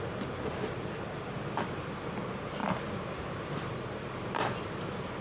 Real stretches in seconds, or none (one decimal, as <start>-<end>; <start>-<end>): 0.0-5.2